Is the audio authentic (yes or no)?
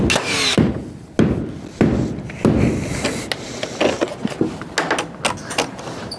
yes